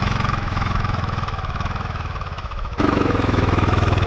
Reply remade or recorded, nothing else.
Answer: remade